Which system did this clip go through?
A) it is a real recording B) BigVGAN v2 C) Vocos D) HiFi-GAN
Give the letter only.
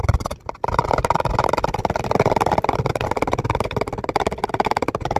B